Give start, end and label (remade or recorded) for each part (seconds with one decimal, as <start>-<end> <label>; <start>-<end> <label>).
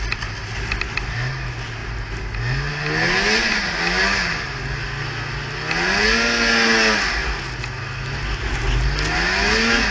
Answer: 0.0-9.9 recorded